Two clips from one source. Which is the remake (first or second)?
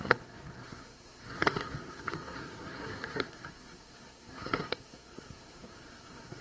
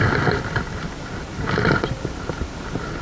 first